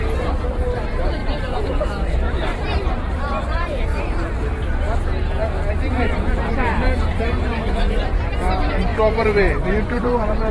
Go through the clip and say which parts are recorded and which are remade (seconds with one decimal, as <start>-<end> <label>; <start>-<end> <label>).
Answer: 0.0-3.9 remade; 3.9-5.9 recorded; 5.9-10.5 remade